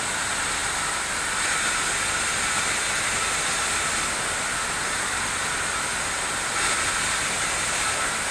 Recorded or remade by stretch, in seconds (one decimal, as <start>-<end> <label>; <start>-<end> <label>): 0.0-8.3 recorded